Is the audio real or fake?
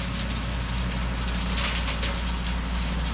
real